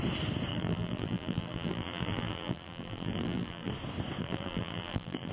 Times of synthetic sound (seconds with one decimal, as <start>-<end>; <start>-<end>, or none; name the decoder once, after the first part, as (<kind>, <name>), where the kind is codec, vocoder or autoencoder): 0.5-3.7 (vocoder, BigVGAN v2); 4.2-5.3